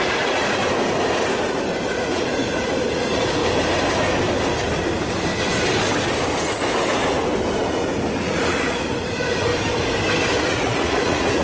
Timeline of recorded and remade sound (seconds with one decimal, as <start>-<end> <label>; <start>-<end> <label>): 0.0-0.6 remade; 0.6-2.0 recorded; 2.0-3.4 remade; 3.4-8.1 recorded; 8.1-9.5 remade; 9.5-10.4 recorded; 10.4-11.4 remade